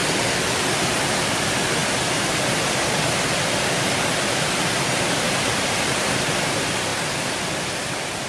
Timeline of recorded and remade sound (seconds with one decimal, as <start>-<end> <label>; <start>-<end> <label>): 0.0-1.4 recorded; 1.4-1.8 remade; 1.8-3.9 recorded; 3.9-8.3 remade